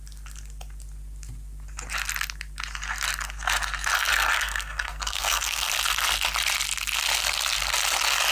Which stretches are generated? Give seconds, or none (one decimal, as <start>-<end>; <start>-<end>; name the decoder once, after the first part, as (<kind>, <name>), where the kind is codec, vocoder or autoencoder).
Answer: 4.1-5.7 (codec, SNAC)